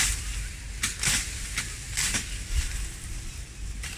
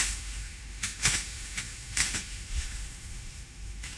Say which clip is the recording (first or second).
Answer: first